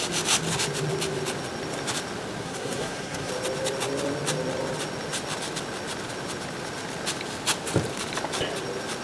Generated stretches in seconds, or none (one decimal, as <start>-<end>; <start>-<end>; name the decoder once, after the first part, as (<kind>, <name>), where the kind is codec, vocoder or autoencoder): 2.4-3.3 (codec, SNAC)